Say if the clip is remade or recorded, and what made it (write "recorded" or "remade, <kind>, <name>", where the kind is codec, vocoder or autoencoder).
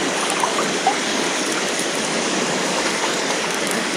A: remade, codec, DAC